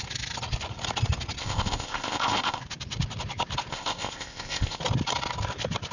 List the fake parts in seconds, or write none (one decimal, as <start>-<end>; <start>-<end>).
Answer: 1.4-2.6; 3.7-4.8